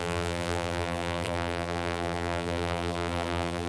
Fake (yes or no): yes